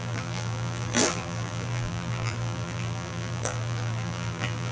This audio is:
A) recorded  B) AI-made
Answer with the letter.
B